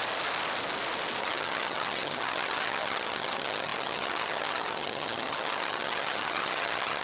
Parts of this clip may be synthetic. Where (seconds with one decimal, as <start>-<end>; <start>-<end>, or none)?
1.2-7.0